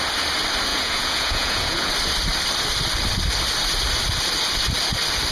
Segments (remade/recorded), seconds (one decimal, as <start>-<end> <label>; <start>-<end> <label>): 0.0-0.7 recorded; 0.7-1.9 remade; 1.9-5.3 recorded